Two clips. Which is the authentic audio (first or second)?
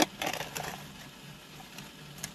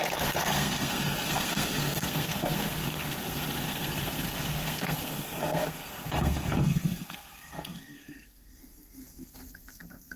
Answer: first